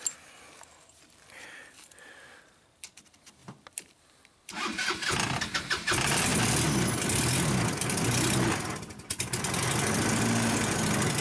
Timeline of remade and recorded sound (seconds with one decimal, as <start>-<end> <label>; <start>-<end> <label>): 0.0-11.2 recorded